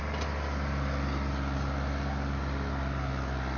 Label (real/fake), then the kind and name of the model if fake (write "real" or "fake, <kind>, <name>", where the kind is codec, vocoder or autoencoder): real